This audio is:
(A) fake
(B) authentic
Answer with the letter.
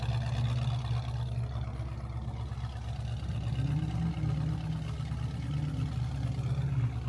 B